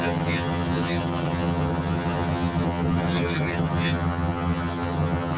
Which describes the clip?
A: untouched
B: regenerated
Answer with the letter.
B